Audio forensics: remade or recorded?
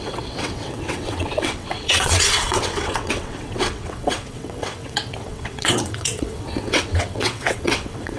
remade